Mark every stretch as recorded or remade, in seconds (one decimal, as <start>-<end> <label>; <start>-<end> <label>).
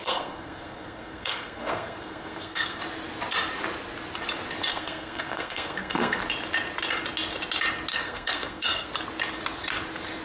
0.0-2.8 remade; 2.8-4.7 recorded; 4.7-6.2 remade; 6.2-7.9 recorded; 7.9-8.9 remade; 8.9-10.2 recorded